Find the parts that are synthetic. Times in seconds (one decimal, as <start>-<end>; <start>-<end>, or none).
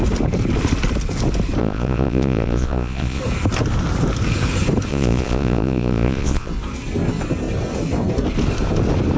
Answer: 1.6-3.2; 4.9-6.5